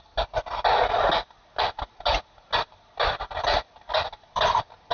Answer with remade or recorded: recorded